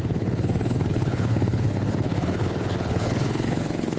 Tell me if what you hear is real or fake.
fake